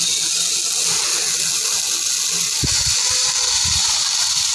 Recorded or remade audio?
recorded